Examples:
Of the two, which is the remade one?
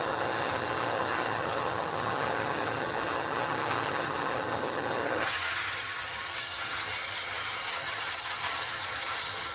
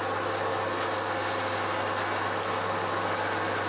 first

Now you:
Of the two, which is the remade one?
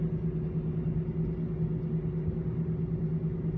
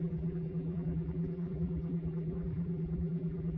second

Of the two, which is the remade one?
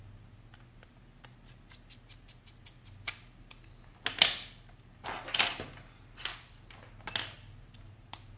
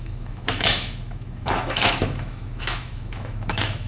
second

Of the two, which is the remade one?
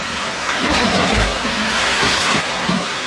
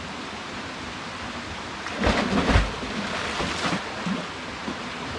first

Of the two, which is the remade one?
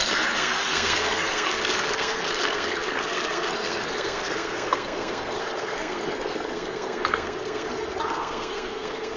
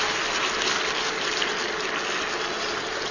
first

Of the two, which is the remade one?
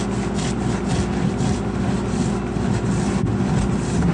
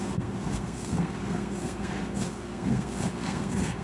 second